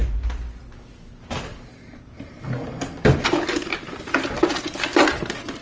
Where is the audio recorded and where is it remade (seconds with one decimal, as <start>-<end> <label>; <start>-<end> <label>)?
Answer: 0.0-1.5 recorded; 1.5-4.6 remade; 4.6-5.6 recorded